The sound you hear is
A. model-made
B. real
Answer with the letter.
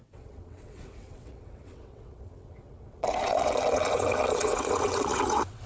A